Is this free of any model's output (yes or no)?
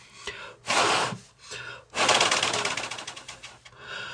yes